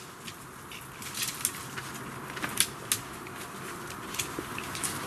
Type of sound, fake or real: real